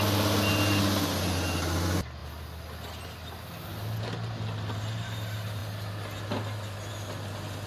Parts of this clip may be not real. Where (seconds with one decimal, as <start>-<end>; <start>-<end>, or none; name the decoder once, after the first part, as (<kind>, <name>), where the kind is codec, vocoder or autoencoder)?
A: none